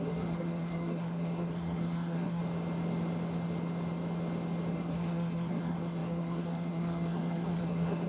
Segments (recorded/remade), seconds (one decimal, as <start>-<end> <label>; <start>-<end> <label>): 0.0-2.4 remade; 2.4-4.7 recorded; 4.7-8.1 remade